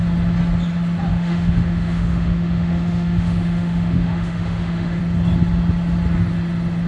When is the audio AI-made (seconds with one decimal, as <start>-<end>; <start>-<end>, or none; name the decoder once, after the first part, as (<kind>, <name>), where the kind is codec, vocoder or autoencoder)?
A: 1.1-5.0 (autoencoder, DAC-VAE)